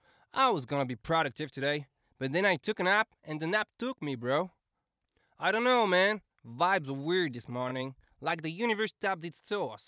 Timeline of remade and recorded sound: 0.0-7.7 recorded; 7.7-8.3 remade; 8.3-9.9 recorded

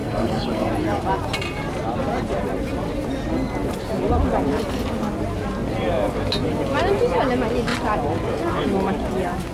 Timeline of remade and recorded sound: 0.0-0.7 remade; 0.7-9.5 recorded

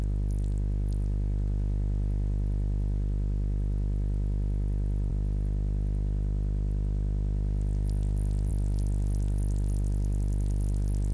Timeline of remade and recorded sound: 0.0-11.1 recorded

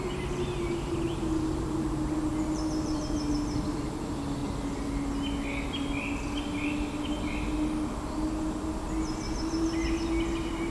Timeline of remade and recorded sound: 0.0-2.3 recorded; 2.3-3.2 remade; 3.2-10.7 recorded